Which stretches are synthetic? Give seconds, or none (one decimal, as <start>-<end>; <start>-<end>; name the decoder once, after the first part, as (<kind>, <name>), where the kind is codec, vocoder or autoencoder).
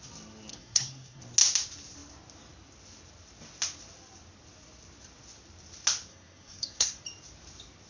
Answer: 0.5-1.2 (codec, SNAC); 6.1-7.0